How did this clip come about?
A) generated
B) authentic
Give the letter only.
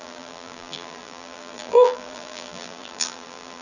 A